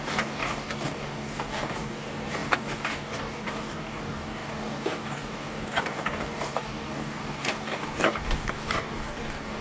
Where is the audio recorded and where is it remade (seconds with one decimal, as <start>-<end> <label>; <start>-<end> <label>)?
0.0-9.6 remade